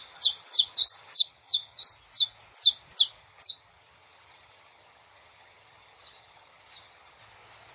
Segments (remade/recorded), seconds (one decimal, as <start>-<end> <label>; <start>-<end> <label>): 0.0-1.9 remade; 1.9-3.2 recorded; 3.2-7.2 remade; 7.2-7.7 recorded